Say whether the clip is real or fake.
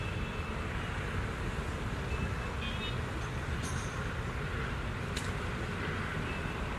real